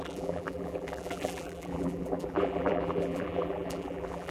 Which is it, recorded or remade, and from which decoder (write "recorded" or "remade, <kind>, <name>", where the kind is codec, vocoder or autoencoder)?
remade, vocoder, BigVGAN v2